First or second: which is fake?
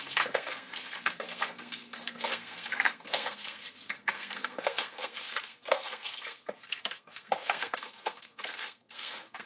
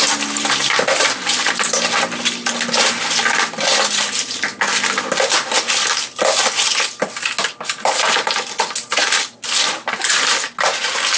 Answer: first